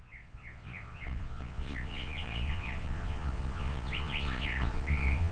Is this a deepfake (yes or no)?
yes